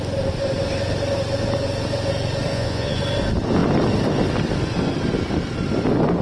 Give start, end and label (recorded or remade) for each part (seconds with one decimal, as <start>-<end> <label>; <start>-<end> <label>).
0.0-2.5 recorded; 2.5-3.0 remade; 3.0-6.2 recorded